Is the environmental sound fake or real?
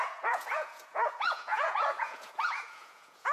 fake